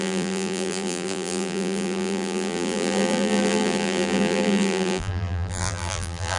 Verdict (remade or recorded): remade